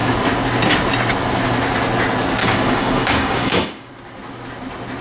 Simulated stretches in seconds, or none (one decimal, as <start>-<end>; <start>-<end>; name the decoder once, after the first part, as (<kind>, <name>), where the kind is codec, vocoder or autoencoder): 2.4-3.9 (codec, DAC)